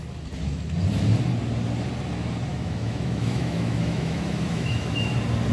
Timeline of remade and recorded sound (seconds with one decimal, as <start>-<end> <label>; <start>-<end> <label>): 0.0-2.5 recorded; 2.5-5.1 remade; 5.1-5.5 recorded